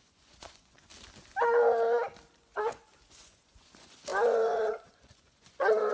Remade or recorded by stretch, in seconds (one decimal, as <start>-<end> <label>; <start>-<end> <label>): 0.0-0.9 remade; 0.9-2.4 recorded; 2.4-5.9 remade